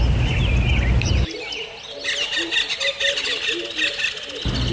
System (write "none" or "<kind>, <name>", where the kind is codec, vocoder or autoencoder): none